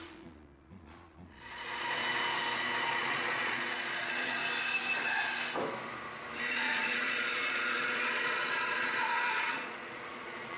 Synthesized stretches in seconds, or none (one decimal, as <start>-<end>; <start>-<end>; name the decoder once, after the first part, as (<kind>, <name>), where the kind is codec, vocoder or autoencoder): 0.0-2.0 (vocoder, Vocos); 2.9-4.4; 6.5-10.6